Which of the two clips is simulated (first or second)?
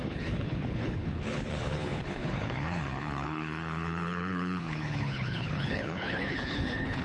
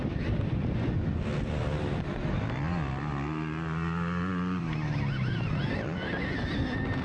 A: first